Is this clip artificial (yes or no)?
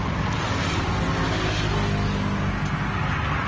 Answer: no